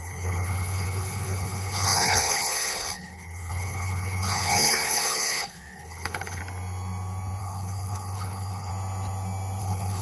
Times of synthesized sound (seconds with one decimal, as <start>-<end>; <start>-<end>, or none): 0.0-6.4; 7.4-8.7; 9.6-10.0